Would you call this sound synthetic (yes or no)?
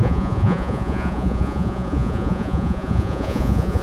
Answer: yes